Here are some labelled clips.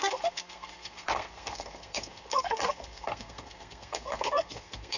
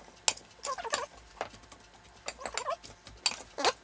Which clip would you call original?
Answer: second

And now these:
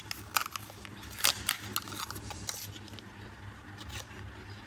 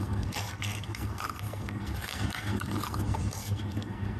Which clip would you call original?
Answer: first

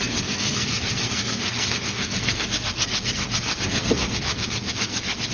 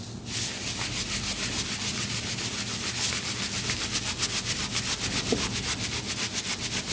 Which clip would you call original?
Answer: second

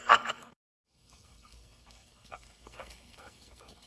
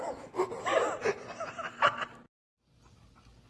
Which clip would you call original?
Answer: second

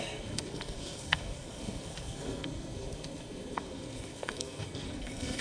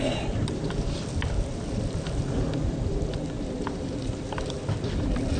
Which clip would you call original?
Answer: second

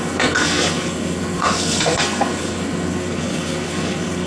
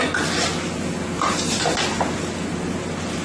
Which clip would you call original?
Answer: second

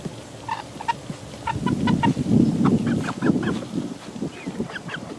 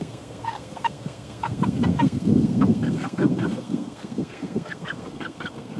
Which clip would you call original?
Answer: first